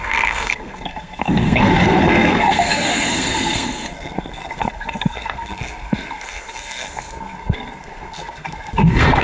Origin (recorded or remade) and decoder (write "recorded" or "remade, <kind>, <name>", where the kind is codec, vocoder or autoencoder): remade, codec, SNAC